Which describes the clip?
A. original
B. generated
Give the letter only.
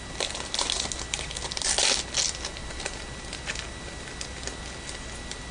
A